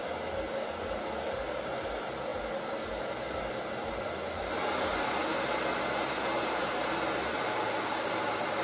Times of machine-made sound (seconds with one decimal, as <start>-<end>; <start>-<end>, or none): none